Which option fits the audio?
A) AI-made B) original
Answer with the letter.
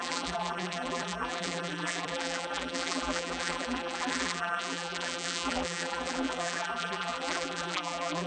A